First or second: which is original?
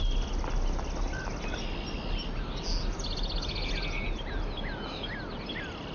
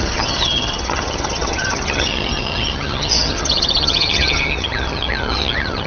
first